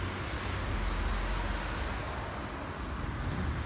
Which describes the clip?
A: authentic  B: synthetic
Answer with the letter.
A